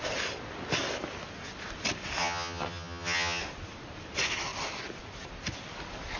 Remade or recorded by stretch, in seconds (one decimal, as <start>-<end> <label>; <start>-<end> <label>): 0.0-2.2 recorded; 2.2-3.4 remade; 3.4-6.2 recorded